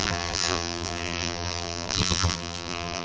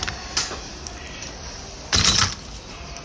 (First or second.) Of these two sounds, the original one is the second